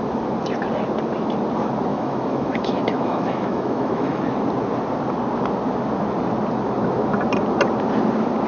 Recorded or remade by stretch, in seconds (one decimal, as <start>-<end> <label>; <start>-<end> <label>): 0.0-1.9 recorded; 1.9-4.2 remade; 4.2-8.5 recorded